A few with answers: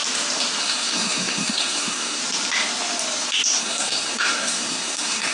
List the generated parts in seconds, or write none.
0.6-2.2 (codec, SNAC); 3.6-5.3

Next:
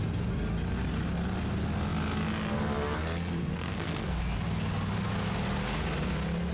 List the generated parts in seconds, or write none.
3.4-4.2 (codec, SNAC)

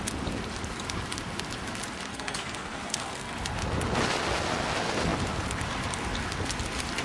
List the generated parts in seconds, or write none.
2.1-3.3 (codec, SNAC)

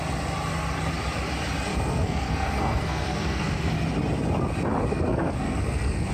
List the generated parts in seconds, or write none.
1.7-3.7 (codec, SNAC); 4.9-6.1

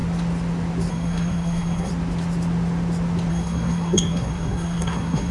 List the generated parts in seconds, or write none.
0.9-1.9 (codec, SNAC); 3.3-5.3

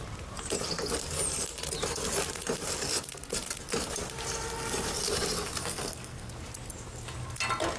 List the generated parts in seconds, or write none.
5.6-6.3 (codec, SNAC)

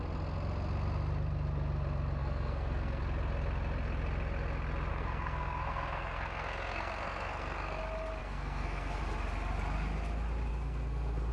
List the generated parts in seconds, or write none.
2.2-3.0 (codec, SNAC); 4.9-7.8; 8.2-9.0; 10.5-11.3

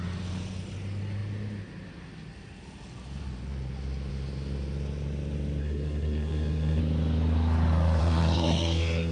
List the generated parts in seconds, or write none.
5.6-6.8 (codec, SNAC); 8.0-9.1